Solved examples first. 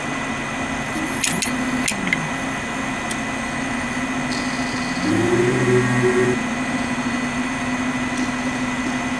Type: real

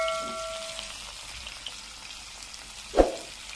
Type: real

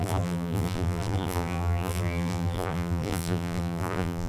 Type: fake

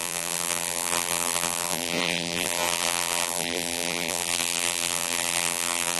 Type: fake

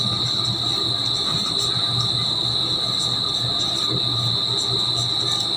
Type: real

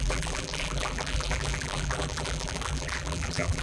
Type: fake